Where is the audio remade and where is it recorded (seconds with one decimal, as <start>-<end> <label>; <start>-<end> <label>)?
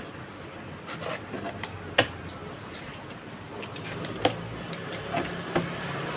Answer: 0.0-6.2 recorded